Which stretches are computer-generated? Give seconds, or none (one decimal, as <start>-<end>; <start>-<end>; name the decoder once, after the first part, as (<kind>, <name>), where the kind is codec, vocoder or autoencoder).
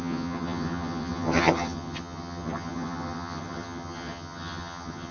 0.0-5.1 (vocoder, HiFi-GAN)